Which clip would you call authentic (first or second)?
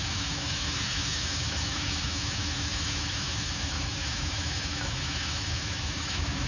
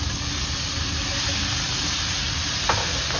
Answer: second